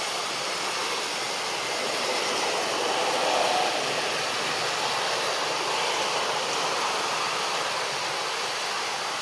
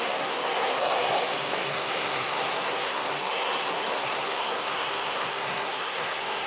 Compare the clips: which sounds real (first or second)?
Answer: first